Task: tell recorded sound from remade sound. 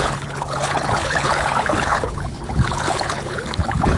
remade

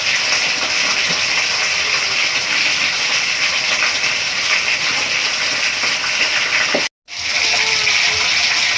recorded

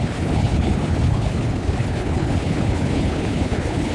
remade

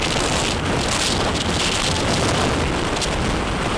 recorded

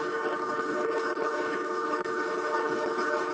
remade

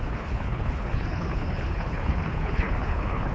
remade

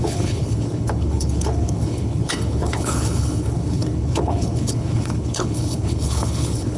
remade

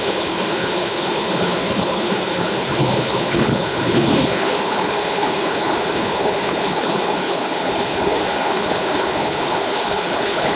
remade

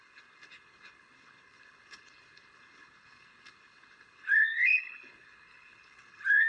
remade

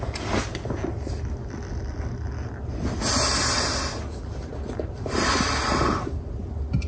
recorded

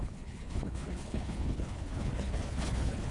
remade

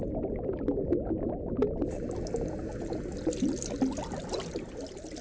recorded